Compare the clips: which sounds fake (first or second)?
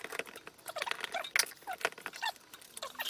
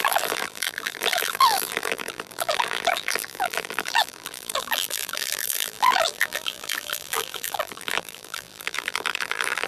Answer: second